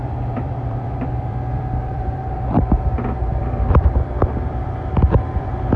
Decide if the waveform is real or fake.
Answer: fake